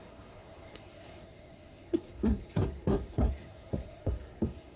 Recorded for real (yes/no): no